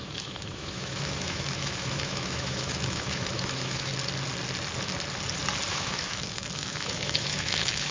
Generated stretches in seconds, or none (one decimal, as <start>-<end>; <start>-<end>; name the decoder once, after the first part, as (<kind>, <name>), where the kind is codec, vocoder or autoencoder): 0.0-3.9 (autoencoder, DAC-VAE); 5.7-7.9